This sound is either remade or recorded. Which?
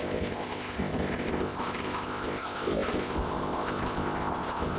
remade